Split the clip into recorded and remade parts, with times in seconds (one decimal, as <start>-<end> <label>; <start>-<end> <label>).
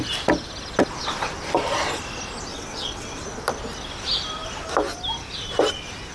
0.0-2.5 recorded; 2.5-3.2 remade; 3.2-6.1 recorded